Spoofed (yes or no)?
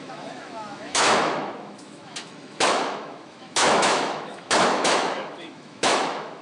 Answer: yes